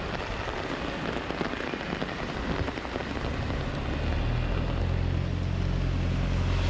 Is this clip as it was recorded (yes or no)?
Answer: yes